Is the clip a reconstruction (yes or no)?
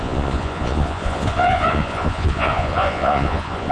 yes